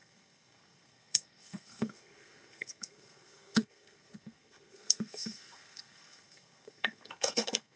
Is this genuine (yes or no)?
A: no